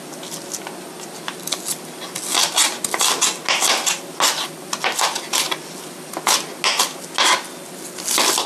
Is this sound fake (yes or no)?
no